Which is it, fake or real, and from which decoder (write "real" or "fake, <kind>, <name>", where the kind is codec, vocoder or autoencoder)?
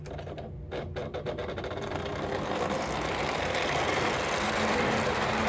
real